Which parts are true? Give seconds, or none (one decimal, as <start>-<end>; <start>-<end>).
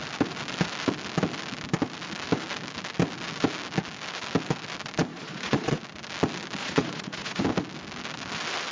0.0-5.1; 5.8-6.6; 7.4-8.7